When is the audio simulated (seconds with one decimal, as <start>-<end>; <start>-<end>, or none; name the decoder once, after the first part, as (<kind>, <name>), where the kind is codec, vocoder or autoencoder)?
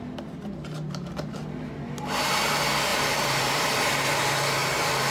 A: 2.9-4.1 (vocoder, BigVGAN v2)